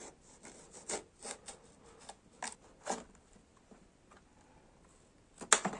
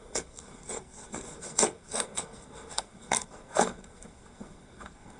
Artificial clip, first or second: second